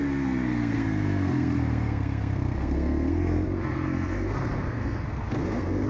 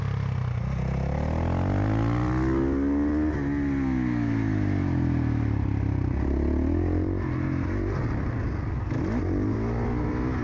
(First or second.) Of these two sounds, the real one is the second